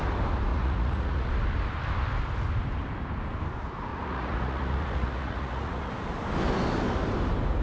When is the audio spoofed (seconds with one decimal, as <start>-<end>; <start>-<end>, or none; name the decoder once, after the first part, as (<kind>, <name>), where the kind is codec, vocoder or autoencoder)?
0.5-1.3 (vocoder, Vocos); 3.9-5.9